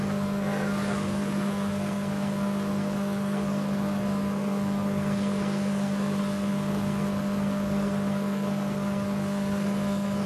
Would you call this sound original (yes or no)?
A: no